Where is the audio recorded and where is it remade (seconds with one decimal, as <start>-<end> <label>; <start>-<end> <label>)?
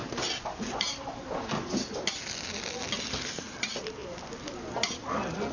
0.0-5.5 recorded